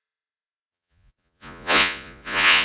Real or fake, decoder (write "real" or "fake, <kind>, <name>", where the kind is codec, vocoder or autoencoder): fake, vocoder, Vocos